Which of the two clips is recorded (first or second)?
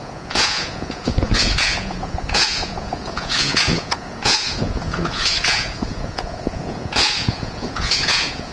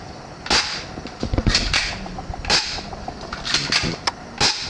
second